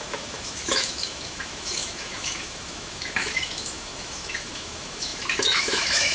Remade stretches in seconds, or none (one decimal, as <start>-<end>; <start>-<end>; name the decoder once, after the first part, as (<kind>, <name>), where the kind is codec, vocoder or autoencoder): 0.0-6.1 (autoencoder, DAC-VAE)

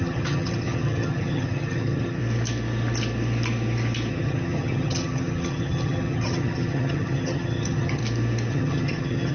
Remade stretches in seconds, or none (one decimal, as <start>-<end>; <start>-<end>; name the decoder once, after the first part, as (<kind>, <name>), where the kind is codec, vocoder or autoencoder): 0.0-2.2 (vocoder, HiFi-GAN); 4.1-8.0; 8.5-9.3

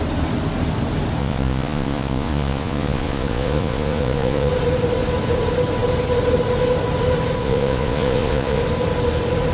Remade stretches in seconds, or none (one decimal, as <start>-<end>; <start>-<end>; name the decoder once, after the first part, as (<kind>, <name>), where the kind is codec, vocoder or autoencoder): 1.2-4.5 (vocoder, Vocos); 7.4-8.6

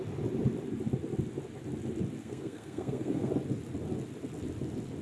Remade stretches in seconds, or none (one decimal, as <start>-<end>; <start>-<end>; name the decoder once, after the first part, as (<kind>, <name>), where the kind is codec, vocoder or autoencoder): 2.2-3.3 (codec, SNAC)

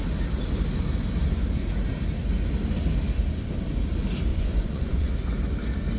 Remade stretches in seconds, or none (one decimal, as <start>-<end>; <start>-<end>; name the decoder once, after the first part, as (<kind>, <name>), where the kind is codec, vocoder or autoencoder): 4.3-5.1 (vocoder, Vocos)

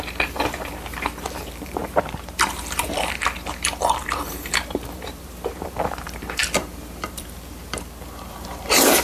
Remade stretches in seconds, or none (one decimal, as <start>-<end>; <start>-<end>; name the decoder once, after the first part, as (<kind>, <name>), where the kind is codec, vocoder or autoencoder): 0.0-1.8 (vocoder, BigVGAN v2); 2.6-9.0

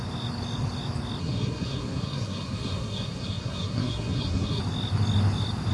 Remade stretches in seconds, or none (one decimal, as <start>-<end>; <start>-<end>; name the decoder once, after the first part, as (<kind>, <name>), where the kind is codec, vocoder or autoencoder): 1.2-4.6 (codec, SNAC)